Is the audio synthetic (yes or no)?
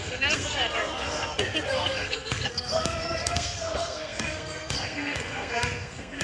yes